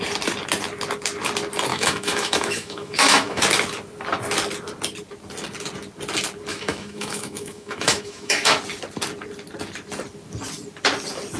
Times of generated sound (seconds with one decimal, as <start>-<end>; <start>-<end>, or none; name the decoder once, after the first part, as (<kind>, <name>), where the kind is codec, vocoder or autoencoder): 1.7-3.4 (autoencoder, DAC-VAE); 6.5-8.6